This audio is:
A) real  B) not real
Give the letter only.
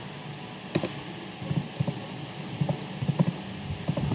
A